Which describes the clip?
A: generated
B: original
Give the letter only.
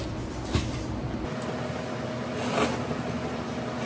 B